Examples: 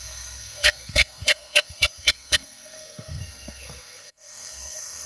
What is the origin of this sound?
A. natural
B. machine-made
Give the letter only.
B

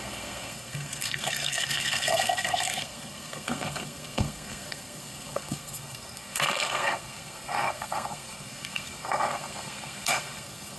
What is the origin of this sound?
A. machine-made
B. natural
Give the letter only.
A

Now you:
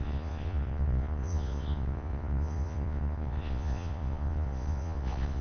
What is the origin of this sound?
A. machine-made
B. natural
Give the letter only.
A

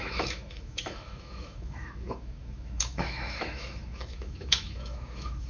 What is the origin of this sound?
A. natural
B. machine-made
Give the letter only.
B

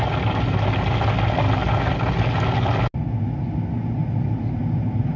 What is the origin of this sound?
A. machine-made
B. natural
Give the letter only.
B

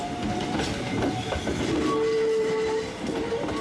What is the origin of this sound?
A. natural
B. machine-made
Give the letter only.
A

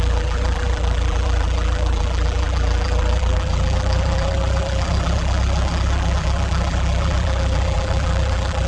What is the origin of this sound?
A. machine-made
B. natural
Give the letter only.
A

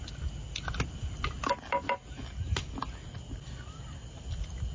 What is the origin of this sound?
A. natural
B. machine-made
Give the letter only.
A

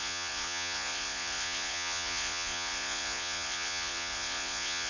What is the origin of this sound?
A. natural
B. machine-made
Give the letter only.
B